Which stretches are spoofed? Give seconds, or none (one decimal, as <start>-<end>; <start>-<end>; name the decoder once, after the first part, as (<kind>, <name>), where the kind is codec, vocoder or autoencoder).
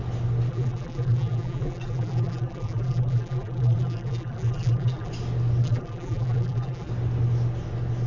0.5-5.1 (vocoder, BigVGAN v2); 5.6-6.9